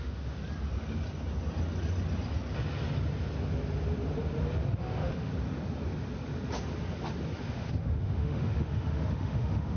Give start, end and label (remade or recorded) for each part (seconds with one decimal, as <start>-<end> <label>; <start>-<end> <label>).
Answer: 0.0-0.4 remade; 0.4-4.8 recorded; 4.8-5.3 remade; 5.3-7.5 recorded; 7.5-9.8 remade